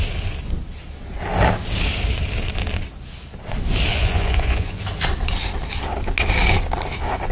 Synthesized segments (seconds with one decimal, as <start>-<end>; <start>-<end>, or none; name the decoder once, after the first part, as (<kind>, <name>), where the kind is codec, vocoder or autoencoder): 3.9-4.8 (vocoder, Vocos)